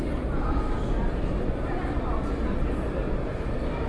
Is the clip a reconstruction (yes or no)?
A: no